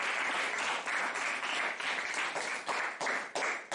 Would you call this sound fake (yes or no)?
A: no